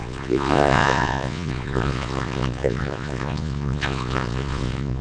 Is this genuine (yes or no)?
no